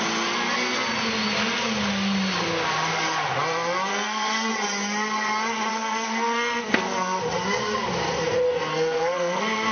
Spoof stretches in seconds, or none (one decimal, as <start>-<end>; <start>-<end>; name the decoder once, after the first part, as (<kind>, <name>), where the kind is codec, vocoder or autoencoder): 3.9-4.5 (codec, SNAC); 5.7-7.2; 8.7-9.7